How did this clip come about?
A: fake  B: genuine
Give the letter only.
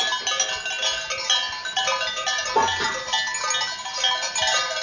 B